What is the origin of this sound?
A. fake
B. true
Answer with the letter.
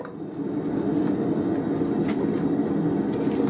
B